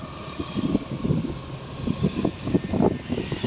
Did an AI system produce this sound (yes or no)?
no